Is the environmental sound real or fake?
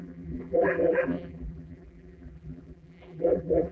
fake